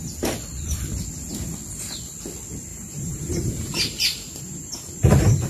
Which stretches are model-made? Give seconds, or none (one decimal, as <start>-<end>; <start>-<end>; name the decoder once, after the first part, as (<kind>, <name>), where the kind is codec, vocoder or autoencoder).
2.7-5.5 (vocoder, BigVGAN v2)

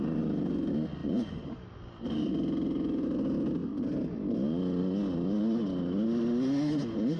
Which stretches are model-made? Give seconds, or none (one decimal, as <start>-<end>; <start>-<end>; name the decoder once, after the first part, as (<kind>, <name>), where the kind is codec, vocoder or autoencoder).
1.0-2.3 (vocoder, BigVGAN v2)

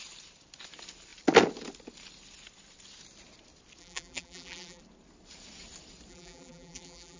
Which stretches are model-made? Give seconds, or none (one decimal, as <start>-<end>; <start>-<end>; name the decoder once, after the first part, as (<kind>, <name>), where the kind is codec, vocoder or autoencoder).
3.8-4.8 (vocoder, BigVGAN v2); 6.1-7.2

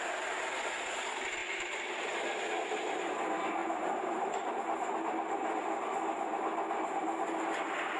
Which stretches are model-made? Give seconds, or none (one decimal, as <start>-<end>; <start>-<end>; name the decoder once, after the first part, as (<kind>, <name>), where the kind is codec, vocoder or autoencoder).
3.6-4.6 (vocoder, BigVGAN v2)

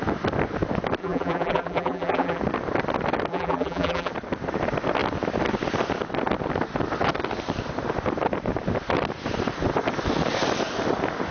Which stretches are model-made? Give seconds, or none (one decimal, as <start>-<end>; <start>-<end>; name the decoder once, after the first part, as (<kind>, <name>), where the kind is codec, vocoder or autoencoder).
1.0-2.4 (vocoder, BigVGAN v2); 3.3-4.1

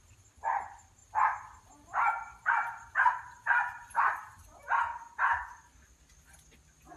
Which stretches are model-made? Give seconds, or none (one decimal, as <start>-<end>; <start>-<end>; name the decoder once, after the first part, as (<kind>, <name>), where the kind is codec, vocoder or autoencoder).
1.0-4.6 (vocoder, BigVGAN v2)